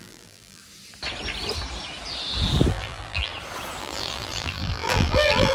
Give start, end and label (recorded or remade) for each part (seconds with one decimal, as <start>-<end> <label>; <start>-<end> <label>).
0.0-0.6 remade; 0.6-2.7 recorded; 2.7-3.3 remade; 3.3-3.8 recorded; 3.8-5.5 remade